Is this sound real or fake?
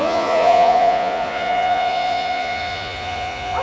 fake